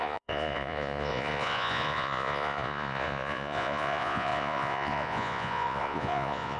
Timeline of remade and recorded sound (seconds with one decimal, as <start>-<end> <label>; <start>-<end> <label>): 0.0-6.6 remade